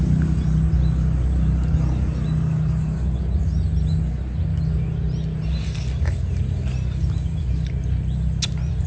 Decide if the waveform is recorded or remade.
recorded